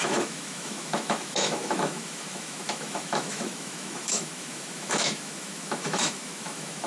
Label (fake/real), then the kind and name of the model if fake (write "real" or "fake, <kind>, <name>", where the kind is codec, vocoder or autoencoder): fake, autoencoder, DAC-VAE